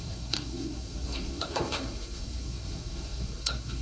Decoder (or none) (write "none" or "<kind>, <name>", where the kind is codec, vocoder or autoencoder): codec, SNAC